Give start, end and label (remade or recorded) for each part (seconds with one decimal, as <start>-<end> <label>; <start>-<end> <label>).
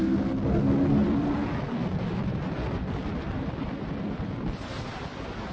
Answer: 0.0-1.0 recorded; 1.0-4.3 remade; 4.3-5.5 recorded